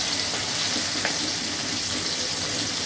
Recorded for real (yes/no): yes